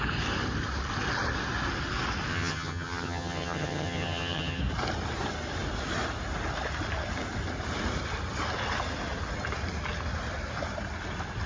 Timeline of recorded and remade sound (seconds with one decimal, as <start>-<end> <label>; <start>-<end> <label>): 0.0-2.3 recorded; 2.3-4.6 remade; 4.6-11.5 recorded

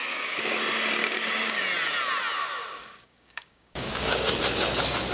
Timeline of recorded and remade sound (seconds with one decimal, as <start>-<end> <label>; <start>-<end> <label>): 0.0-0.6 remade; 0.6-1.0 recorded; 1.0-1.6 remade; 1.6-2.8 recorded; 2.8-4.3 remade; 4.3-5.1 recorded

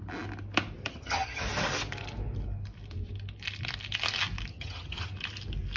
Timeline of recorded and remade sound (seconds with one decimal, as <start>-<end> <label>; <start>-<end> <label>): 0.0-0.9 recorded; 0.9-1.4 remade; 1.4-4.5 recorded; 4.5-5.1 remade; 5.1-5.8 recorded

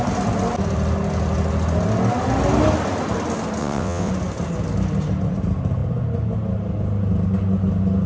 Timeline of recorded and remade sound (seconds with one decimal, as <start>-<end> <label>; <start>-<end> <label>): 0.0-3.6 recorded; 3.6-4.1 remade; 4.1-8.1 recorded

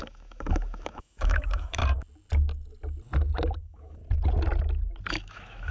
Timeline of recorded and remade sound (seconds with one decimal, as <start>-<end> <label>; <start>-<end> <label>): 0.0-1.8 remade; 1.8-3.6 recorded; 3.6-4.0 remade; 4.0-5.1 recorded; 5.1-5.7 remade